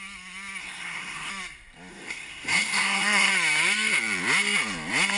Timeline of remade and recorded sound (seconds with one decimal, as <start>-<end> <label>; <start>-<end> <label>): 0.0-0.6 recorded; 0.6-1.3 remade; 1.3-1.9 recorded; 1.9-3.3 remade; 3.3-5.2 recorded